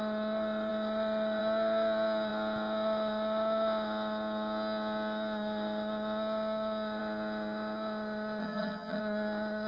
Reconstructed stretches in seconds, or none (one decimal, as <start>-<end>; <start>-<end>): 8.4-9.0